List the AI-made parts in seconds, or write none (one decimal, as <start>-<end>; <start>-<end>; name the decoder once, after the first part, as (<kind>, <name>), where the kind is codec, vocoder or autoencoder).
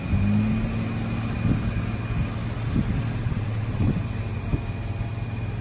3.2-3.9 (vocoder, WaveNeXt)